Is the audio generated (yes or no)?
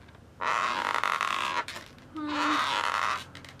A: no